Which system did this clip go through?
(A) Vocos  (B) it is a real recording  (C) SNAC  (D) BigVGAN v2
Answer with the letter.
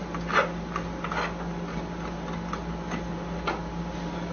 B